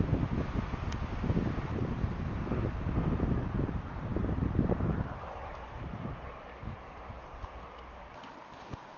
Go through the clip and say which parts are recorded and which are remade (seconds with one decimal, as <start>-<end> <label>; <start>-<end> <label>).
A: 0.0-4.1 recorded; 4.1-7.6 remade; 7.6-9.0 recorded